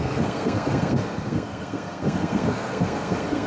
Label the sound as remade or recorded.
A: remade